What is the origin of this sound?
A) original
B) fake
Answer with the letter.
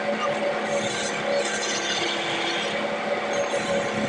A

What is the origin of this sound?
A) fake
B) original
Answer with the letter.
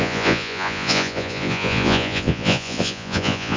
A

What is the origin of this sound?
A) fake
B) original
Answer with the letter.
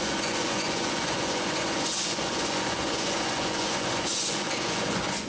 A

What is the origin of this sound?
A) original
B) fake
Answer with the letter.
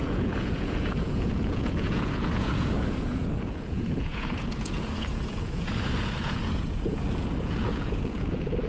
B